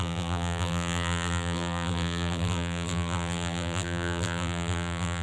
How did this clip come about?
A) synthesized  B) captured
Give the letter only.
A